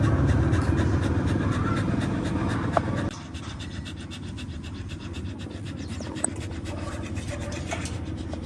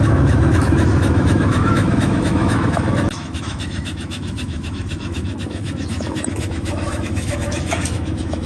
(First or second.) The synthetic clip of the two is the second